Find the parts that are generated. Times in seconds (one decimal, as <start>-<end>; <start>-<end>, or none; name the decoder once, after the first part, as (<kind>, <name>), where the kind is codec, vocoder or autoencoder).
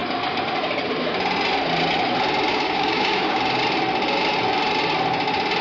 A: 2.5-3.4 (codec, DAC)